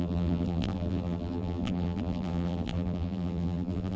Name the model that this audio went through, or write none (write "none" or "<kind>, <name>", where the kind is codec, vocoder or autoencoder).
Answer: vocoder, BigVGAN v2